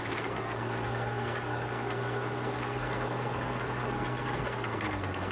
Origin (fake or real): fake